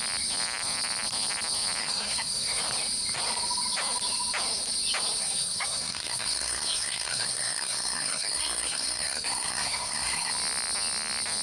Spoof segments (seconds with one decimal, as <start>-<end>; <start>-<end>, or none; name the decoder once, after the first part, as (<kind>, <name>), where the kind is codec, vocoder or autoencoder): 1.8-2.6 (codec, SNAC); 5.2-10.3